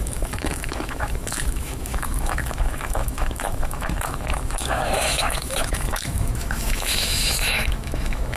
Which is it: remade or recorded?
remade